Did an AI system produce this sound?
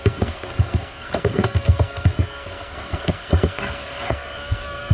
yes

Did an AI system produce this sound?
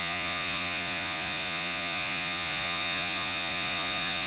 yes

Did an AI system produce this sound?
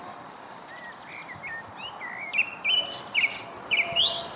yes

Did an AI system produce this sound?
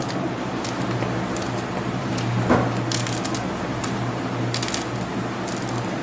no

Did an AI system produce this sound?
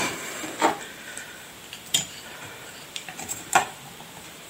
yes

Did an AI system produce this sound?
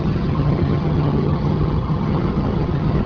yes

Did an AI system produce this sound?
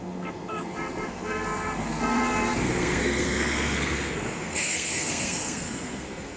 yes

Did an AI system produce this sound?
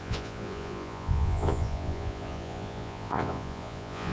yes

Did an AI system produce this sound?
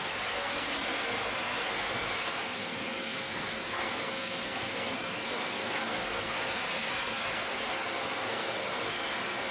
yes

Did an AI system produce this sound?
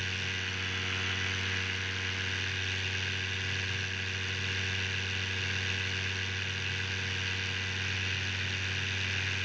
no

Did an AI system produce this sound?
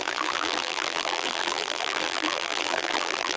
yes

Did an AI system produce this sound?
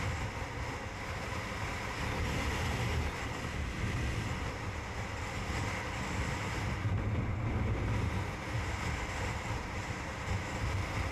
no